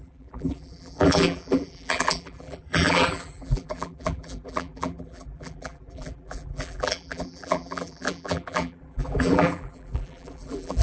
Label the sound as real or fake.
fake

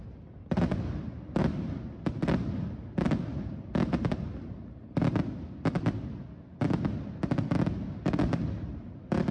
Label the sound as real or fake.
real